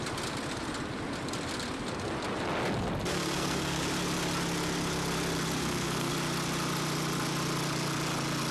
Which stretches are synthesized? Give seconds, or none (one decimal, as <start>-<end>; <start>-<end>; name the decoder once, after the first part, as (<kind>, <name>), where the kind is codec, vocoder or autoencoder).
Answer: 3.1-3.8 (codec, SNAC); 5.6-6.1